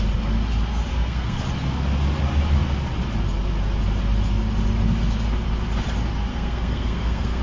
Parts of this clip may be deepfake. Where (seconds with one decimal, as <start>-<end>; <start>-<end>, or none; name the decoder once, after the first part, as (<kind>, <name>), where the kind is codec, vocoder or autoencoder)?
0.9-1.4 (codec, SNAC); 6.3-7.4